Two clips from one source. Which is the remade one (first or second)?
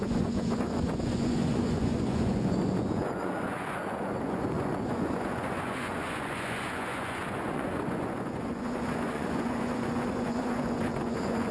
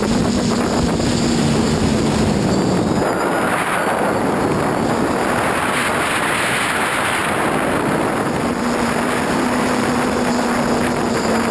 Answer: first